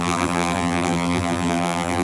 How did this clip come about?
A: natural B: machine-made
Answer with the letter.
B